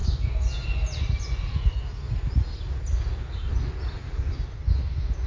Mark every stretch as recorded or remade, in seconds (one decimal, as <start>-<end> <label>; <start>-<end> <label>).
0.0-5.3 recorded

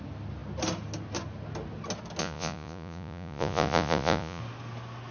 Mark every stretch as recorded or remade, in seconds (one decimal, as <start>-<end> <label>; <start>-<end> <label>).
0.0-2.2 recorded; 2.2-4.4 remade; 4.4-5.1 recorded

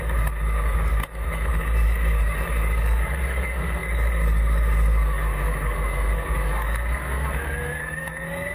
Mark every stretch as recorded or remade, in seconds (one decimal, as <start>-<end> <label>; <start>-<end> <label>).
0.0-8.5 remade